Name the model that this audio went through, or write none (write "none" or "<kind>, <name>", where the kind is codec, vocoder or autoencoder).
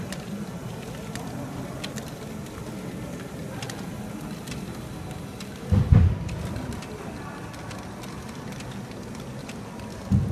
none